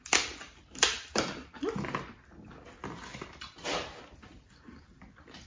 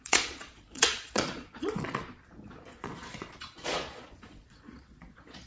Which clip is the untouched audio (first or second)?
first